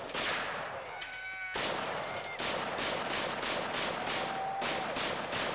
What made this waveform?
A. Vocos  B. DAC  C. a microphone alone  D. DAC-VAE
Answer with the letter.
C